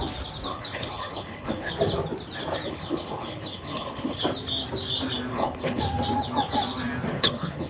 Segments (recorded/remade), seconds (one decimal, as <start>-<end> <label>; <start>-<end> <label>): 0.0-0.5 recorded; 0.5-1.7 remade; 1.7-2.7 recorded; 2.7-4.2 remade; 4.2-5.3 recorded; 5.3-5.8 remade; 5.8-7.1 recorded; 7.1-7.7 remade

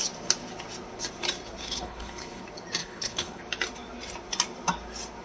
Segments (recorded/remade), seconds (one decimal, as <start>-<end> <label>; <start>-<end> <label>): 0.0-1.6 recorded; 1.6-2.4 remade; 2.4-2.8 recorded; 2.8-3.4 remade; 3.4-5.2 recorded

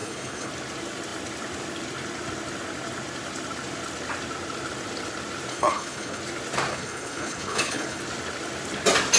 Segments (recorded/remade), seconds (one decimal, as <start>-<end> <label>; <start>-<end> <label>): 0.0-0.5 remade; 0.5-5.5 recorded; 5.5-6.2 remade; 6.2-6.7 recorded; 6.7-8.0 remade; 8.0-9.2 recorded

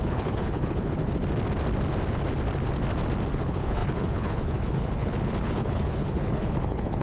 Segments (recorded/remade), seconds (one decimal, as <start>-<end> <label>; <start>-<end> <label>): 0.0-1.0 remade; 1.0-3.3 recorded; 3.3-7.0 remade

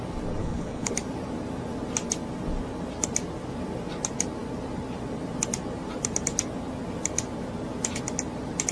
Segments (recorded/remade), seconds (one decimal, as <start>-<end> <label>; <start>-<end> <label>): 0.0-0.4 recorded; 0.4-0.9 remade; 0.9-8.7 recorded

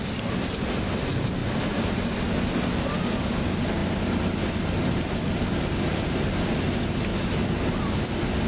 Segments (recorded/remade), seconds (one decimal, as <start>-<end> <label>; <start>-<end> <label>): 0.0-8.5 recorded